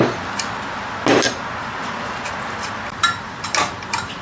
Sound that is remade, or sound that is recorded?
recorded